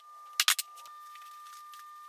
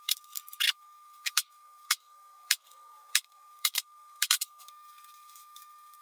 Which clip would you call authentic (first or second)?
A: first